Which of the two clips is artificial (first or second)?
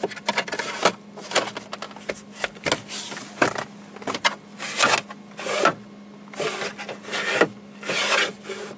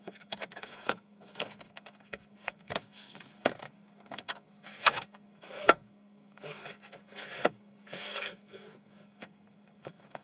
second